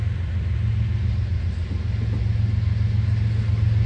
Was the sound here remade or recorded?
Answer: recorded